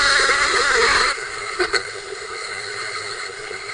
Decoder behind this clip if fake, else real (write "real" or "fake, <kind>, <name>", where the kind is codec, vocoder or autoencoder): fake, codec, SNAC